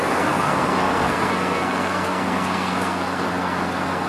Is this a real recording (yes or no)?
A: no